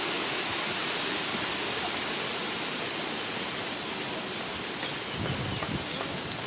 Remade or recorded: recorded